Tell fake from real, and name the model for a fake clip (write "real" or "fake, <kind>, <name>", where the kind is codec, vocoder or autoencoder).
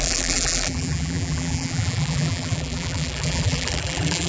fake, vocoder, BigVGAN v2